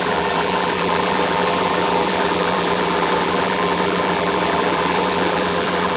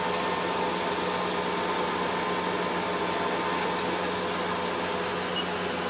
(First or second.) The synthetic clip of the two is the first